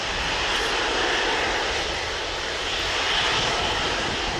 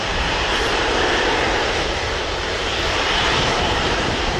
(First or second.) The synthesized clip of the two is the second